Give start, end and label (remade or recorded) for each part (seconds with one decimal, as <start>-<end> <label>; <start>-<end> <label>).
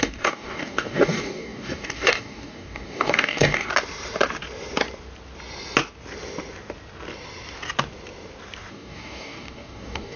0.0-3.7 remade; 3.7-8.7 recorded; 8.7-10.2 remade